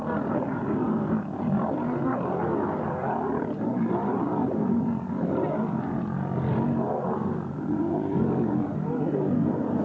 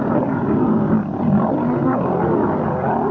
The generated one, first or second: first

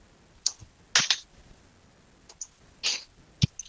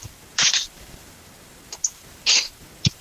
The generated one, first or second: second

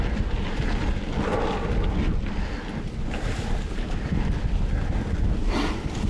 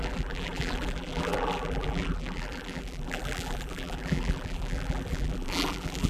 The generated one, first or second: second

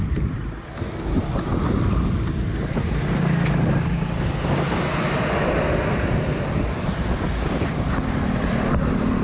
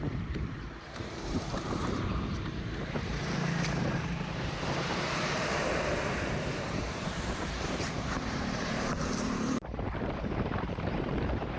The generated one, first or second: second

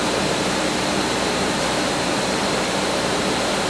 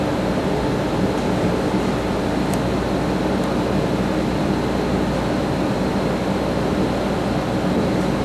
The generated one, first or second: first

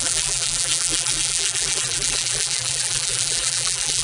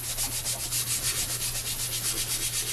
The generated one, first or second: first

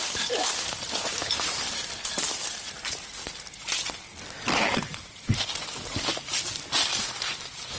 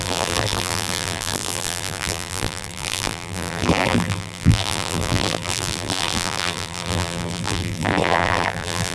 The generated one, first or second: second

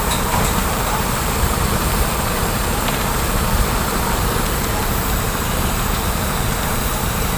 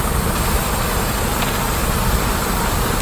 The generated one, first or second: first